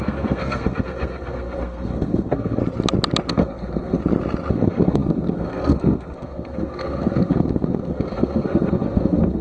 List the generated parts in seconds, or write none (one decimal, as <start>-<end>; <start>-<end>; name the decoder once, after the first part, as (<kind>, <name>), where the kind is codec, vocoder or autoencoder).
0.0-2.6 (codec, SNAC); 3.3-4.0; 4.5-9.4